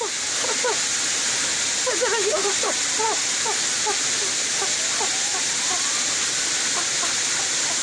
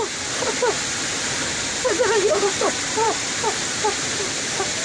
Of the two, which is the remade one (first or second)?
second